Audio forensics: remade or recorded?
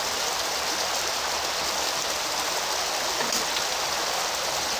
recorded